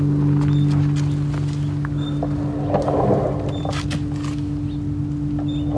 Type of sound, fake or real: real